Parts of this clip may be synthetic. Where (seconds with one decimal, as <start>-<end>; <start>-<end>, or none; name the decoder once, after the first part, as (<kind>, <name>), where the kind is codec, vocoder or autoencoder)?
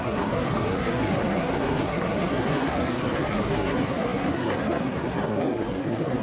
0.0-6.2 (codec, SNAC)